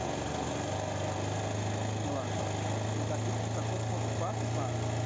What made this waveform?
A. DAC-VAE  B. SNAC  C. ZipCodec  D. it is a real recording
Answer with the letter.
D